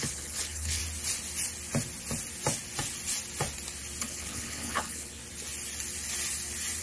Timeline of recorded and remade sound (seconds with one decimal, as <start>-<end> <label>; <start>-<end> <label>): 0.0-0.8 remade; 0.8-4.0 recorded; 4.0-5.2 remade; 5.2-6.8 recorded